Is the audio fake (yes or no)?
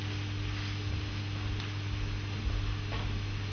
no